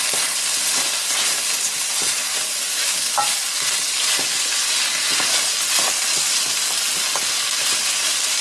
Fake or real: real